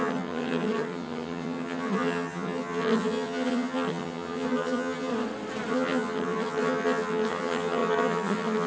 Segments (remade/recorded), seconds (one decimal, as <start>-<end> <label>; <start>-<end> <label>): 0.0-5.1 remade; 5.1-5.7 recorded; 5.7-8.7 remade

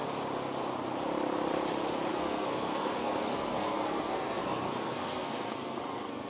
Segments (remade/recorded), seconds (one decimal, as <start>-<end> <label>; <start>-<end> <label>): 0.0-2.1 recorded; 2.1-6.3 remade

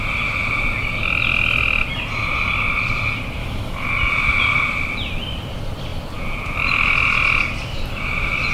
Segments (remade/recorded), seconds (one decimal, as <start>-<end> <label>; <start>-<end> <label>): 0.0-3.4 recorded; 3.4-3.9 remade; 3.9-8.5 recorded

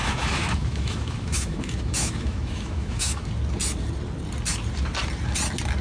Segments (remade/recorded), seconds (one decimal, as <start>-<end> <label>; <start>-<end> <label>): 0.0-3.3 remade; 3.3-5.8 recorded

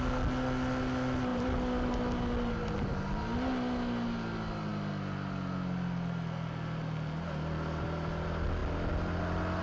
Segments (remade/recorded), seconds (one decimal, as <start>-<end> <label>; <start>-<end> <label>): 0.0-9.6 recorded

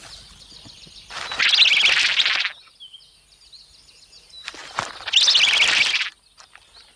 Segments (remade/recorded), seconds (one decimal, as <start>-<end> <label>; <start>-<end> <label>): 0.0-7.0 recorded